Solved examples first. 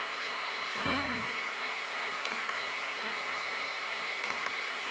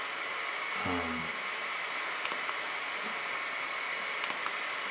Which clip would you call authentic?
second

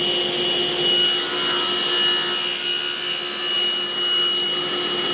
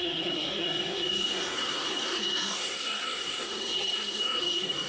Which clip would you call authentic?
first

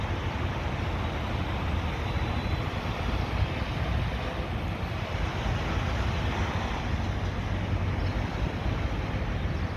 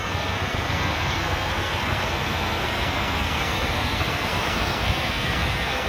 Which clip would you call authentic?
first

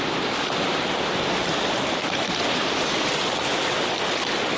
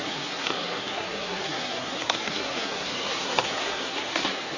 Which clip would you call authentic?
first